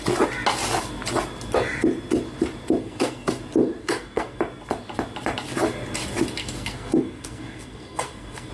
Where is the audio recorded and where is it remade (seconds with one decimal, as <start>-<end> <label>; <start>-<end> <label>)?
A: 0.0-2.8 recorded; 2.8-3.4 remade; 3.4-3.8 recorded; 3.8-4.4 remade; 4.4-6.4 recorded; 6.4-8.5 remade